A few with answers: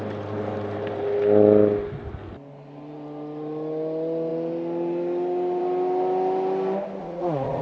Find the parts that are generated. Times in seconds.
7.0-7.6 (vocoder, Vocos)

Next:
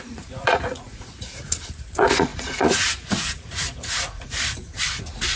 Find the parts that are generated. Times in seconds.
0.0-5.4 (vocoder, Vocos)

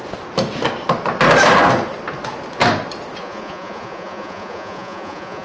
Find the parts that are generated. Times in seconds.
3.2-5.4 (vocoder, Vocos)

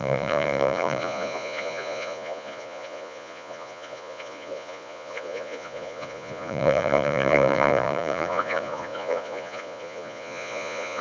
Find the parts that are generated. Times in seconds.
0.0-11.0 (vocoder, Vocos)

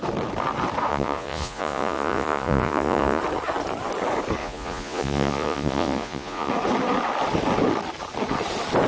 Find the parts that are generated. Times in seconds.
0.9-3.2 (vocoder, Vocos); 4.4-6.5

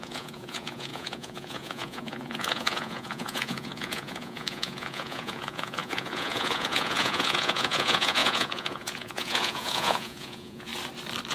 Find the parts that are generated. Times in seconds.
0.0-10.7 (vocoder, Vocos)